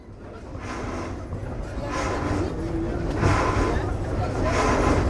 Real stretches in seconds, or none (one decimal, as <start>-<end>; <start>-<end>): 0.0-5.1